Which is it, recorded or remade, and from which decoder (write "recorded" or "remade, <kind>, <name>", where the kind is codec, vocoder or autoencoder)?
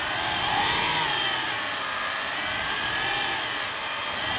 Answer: recorded